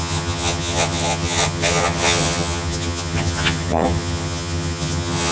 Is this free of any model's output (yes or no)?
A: no